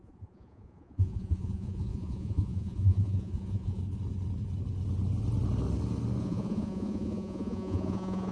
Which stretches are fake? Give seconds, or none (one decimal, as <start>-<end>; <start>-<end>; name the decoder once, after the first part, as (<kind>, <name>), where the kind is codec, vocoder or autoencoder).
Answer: 0.0-3.8 (vocoder, Vocos); 6.2-8.3